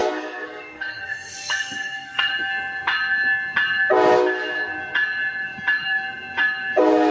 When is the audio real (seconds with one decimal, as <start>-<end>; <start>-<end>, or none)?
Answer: 2.3-7.1